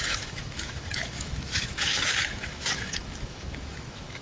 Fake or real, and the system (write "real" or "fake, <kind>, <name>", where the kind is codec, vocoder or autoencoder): fake, autoencoder, DAC-VAE